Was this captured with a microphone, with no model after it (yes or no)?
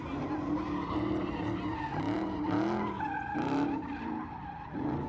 no